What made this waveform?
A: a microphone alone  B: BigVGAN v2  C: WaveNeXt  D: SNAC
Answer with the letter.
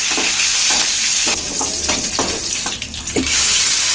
A